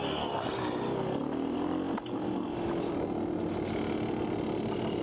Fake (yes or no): no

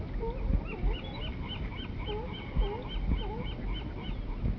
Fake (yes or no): no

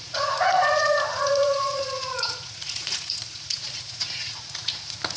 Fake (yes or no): yes